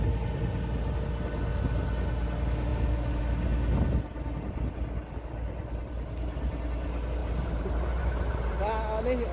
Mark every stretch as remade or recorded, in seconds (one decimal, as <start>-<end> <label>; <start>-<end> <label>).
0.0-7.2 recorded; 7.2-8.6 remade; 8.6-9.3 recorded